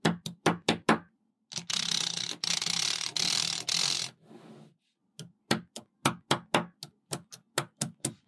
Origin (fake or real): real